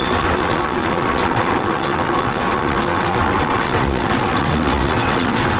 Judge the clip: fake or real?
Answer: fake